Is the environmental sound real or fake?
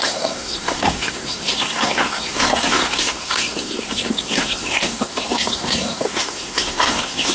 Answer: fake